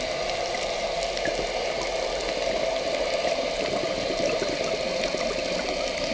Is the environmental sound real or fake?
real